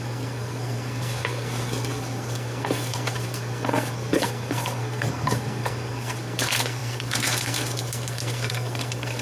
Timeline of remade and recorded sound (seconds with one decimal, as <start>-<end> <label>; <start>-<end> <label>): 0.0-9.2 remade

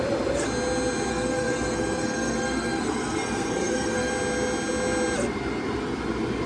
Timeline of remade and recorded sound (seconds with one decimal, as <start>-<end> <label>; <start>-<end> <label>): 0.0-1.1 recorded; 1.1-4.1 remade; 4.1-6.5 recorded

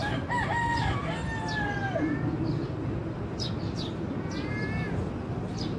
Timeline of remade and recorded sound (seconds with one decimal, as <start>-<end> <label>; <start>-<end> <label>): 0.0-5.8 recorded

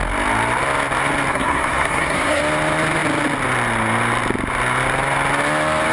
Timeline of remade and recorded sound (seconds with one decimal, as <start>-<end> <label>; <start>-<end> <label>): 0.0-1.3 recorded; 1.3-2.4 remade; 2.4-5.9 recorded